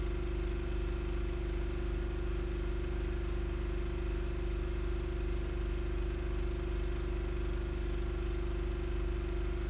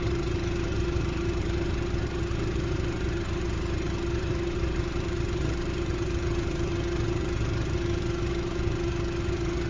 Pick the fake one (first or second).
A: second